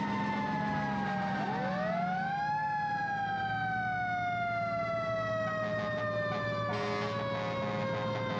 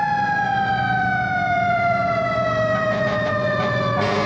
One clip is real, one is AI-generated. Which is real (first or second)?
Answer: first